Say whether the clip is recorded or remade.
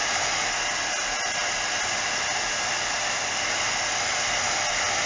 recorded